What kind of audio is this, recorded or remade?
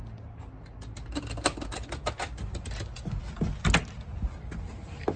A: recorded